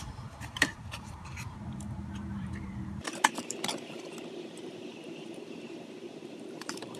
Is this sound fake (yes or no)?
yes